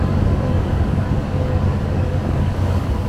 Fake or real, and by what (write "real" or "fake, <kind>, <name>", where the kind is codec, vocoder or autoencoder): fake, codec, DAC